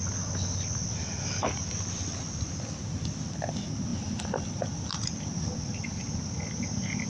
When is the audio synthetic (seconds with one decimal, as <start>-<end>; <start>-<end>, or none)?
none